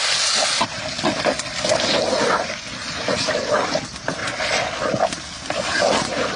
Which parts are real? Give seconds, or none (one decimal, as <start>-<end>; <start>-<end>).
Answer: 0.0-6.4

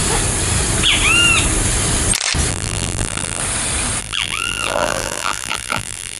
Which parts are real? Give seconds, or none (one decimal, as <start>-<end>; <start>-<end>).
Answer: 0.0-2.5; 3.4-4.0

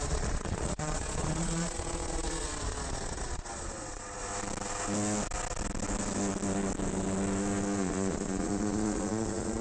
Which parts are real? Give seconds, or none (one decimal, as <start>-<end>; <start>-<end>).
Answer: 4.3-7.8

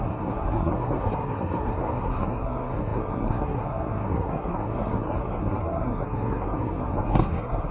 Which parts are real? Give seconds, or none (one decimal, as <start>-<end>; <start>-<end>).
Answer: none

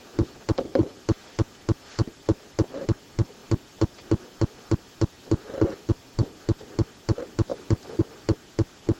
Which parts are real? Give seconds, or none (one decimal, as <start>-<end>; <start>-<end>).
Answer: 0.0-7.5; 8.0-9.0